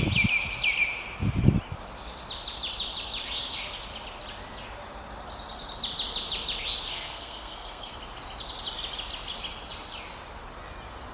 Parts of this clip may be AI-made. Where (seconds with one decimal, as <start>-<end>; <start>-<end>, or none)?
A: 6.9-8.0